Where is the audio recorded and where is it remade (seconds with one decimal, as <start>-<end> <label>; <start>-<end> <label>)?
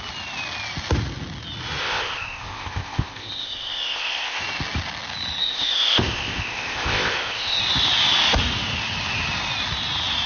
0.0-1.8 recorded; 1.8-4.4 remade; 4.4-5.4 recorded; 5.4-7.6 remade; 7.6-10.3 recorded